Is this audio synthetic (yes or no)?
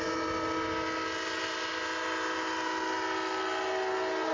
no